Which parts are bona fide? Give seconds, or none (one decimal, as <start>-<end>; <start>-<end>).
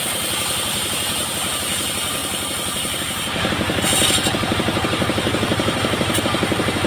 none